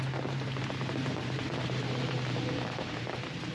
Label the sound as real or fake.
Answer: fake